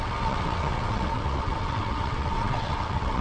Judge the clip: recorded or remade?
remade